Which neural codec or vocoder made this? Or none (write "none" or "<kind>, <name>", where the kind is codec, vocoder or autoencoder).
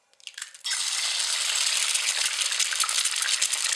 none